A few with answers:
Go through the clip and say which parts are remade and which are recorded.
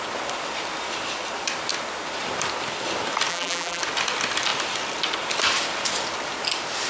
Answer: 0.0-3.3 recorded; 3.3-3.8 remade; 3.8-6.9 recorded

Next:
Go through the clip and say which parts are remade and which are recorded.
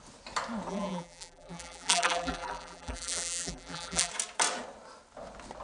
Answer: 0.0-0.7 recorded; 0.7-4.1 remade; 4.1-5.6 recorded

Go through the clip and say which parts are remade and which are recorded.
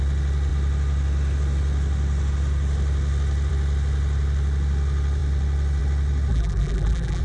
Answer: 0.0-6.3 recorded; 6.3-7.2 remade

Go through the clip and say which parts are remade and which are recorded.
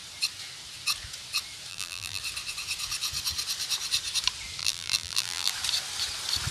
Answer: 0.0-1.7 recorded; 1.7-2.2 remade; 2.2-4.6 recorded; 4.6-5.5 remade; 5.5-6.5 recorded